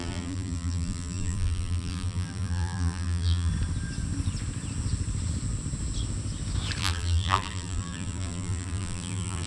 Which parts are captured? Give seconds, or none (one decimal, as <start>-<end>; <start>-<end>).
3.5-6.8